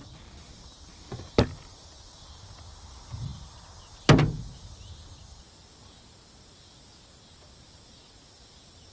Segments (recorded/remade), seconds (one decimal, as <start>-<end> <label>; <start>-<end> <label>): 0.0-8.9 recorded